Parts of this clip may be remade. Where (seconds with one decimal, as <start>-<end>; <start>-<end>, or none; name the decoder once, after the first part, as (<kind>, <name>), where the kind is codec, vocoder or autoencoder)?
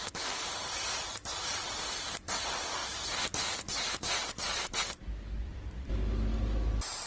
none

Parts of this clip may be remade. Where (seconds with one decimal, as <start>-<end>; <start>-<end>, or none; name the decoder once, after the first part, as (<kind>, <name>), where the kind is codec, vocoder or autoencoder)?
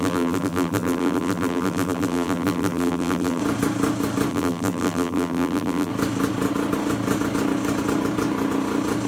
0.0-3.4 (vocoder, BigVGAN v2); 4.3-5.9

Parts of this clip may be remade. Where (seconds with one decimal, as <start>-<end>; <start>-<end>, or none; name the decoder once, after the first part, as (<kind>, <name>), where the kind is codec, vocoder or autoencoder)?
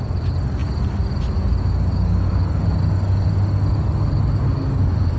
none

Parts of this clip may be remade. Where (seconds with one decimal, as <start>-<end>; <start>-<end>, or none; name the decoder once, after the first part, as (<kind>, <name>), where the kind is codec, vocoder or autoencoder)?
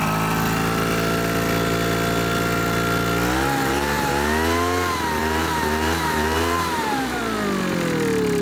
3.6-4.1 (vocoder, BigVGAN v2); 5.2-7.2